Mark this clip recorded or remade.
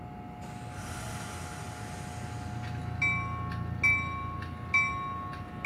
recorded